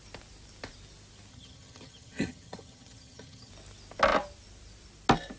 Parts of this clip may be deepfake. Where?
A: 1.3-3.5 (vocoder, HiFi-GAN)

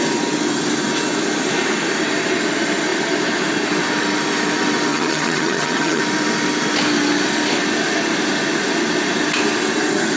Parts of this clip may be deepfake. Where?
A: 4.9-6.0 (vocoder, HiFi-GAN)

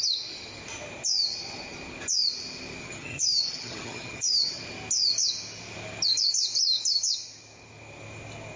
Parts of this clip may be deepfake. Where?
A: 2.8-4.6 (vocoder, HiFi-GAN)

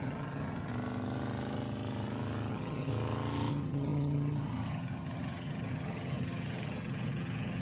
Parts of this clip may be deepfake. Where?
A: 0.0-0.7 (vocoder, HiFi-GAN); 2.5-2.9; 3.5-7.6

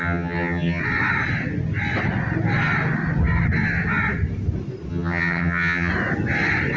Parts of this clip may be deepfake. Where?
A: 0.0-0.8 (vocoder, HiFi-GAN); 4.9-5.9

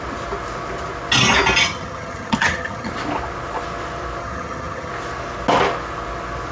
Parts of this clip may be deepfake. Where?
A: 1.6-2.9 (vocoder, HiFi-GAN); 4.2-4.9